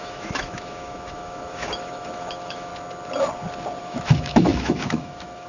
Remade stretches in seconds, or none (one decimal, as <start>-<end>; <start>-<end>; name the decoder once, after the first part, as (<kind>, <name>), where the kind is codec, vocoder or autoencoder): 0.0-2.7 (autoencoder, DAC-VAE); 3.8-5.5